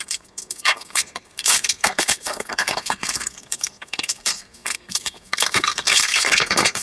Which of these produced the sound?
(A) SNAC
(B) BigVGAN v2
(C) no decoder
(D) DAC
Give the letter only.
A